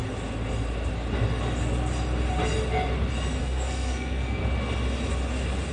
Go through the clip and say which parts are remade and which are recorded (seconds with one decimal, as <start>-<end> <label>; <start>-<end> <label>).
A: 0.0-3.4 recorded; 3.4-4.4 remade; 4.4-5.7 recorded